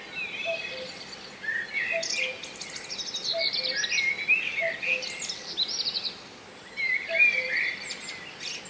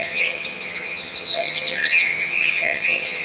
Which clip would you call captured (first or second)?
first